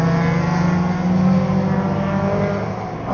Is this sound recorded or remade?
recorded